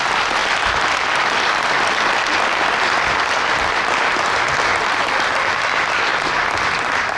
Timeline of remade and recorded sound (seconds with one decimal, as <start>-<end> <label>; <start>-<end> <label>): 0.0-7.2 recorded